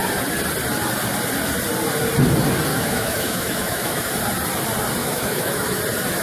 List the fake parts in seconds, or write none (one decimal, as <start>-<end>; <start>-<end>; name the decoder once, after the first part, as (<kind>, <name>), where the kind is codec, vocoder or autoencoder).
2.7-4.1 (autoencoder, DAC-VAE); 5.0-5.8